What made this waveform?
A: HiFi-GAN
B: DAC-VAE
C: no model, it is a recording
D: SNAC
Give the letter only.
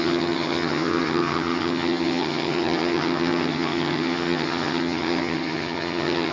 A